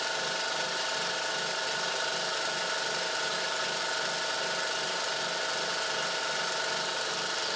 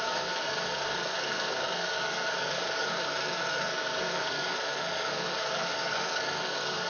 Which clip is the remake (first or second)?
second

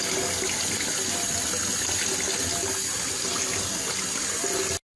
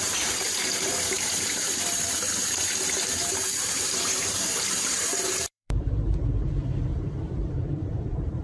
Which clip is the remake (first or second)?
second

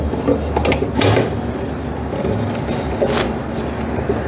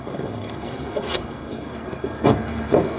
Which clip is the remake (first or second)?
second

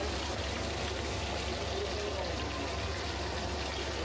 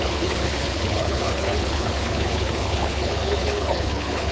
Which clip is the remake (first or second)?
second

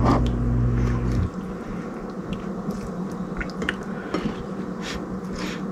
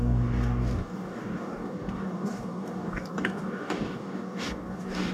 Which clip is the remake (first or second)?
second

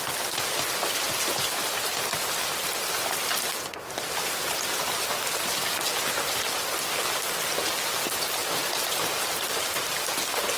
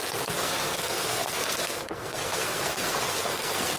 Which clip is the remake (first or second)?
second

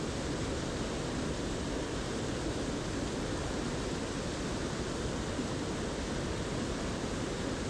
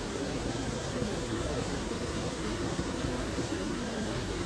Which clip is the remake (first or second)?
second